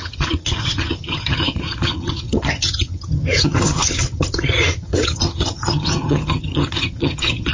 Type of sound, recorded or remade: remade